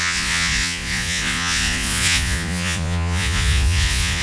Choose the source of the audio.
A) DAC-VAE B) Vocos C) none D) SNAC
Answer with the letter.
B